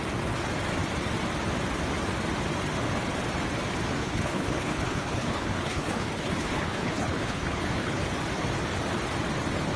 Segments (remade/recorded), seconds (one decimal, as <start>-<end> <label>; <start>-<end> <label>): 0.0-4.0 recorded; 4.0-8.0 remade; 8.0-9.8 recorded